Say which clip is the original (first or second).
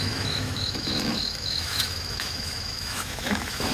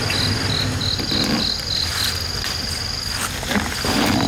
second